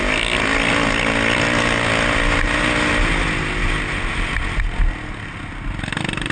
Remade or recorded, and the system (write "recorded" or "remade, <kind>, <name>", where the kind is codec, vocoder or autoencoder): recorded